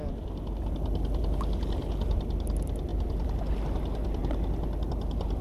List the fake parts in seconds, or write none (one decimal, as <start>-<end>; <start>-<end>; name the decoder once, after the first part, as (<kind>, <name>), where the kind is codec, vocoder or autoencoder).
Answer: 2.9-3.4 (vocoder, BigVGAN v2)